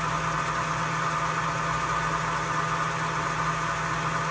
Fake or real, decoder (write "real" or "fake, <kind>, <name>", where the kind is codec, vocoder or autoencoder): real